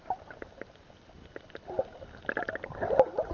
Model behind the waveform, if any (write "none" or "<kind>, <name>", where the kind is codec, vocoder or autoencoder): none